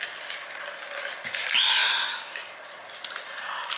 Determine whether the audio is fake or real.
real